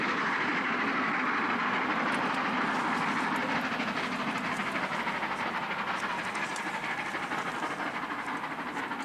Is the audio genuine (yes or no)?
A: yes